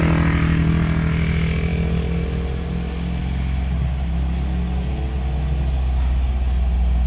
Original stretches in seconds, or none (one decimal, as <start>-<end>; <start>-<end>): 0.0-7.1